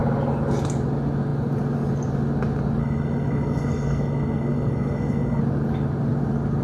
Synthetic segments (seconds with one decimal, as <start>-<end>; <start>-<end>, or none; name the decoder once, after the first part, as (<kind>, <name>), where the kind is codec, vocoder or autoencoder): 2.8-5.4 (codec, SNAC)